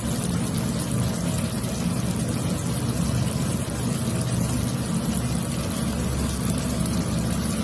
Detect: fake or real real